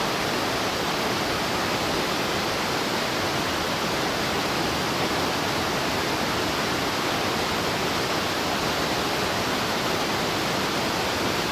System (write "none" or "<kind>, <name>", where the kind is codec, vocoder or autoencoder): vocoder, BigVGAN v2